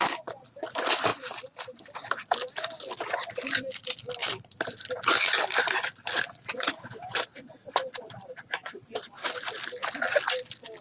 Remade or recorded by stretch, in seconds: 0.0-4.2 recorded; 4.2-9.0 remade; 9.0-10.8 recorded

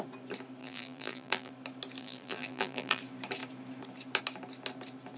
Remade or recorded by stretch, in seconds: 0.0-0.6 recorded; 0.6-1.5 remade; 1.5-2.0 recorded; 2.0-3.0 remade; 3.0-5.2 recorded

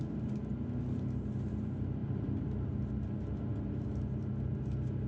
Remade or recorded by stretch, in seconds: 0.0-2.0 recorded; 2.0-2.7 remade; 2.7-3.5 recorded; 3.5-4.2 remade; 4.2-5.1 recorded

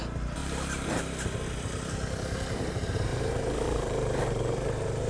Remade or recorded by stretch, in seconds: 0.0-0.4 recorded; 0.4-1.0 remade; 1.0-3.1 recorded; 3.1-5.1 remade